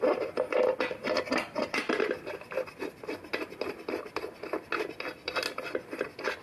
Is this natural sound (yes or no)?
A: yes